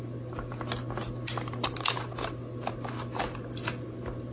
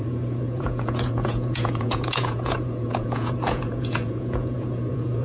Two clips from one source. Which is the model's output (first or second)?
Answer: second